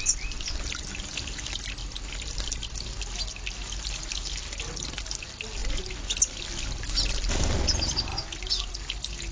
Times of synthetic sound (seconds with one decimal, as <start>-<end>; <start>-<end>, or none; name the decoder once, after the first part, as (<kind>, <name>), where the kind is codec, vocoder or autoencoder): none